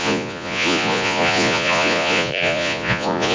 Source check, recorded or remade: remade